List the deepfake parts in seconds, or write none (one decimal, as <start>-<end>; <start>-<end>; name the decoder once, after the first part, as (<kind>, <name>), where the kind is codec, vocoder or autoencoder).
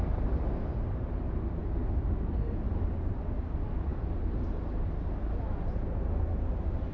none